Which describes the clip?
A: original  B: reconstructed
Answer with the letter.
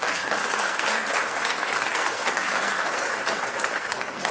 B